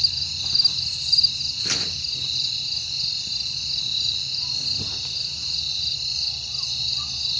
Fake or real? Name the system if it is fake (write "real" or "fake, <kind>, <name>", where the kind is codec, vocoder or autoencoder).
real